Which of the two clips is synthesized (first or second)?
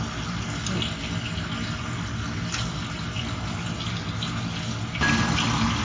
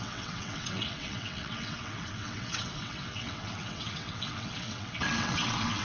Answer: second